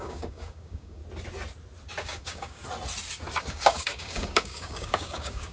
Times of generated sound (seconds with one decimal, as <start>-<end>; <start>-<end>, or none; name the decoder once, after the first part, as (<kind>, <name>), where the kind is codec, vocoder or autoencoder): 0.0-1.0 (codec, DAC); 2.0-2.6; 3.4-5.5